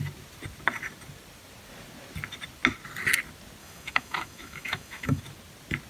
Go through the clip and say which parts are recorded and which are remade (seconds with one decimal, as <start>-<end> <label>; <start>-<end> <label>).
0.0-3.6 recorded; 3.6-5.2 remade; 5.2-5.9 recorded